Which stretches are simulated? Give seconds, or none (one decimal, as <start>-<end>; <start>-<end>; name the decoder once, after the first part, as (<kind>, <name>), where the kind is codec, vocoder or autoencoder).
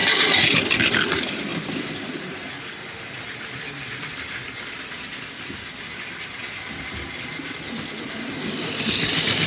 5.1-5.7 (vocoder, BigVGAN v2)